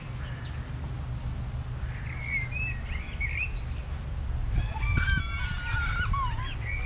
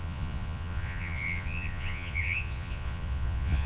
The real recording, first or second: first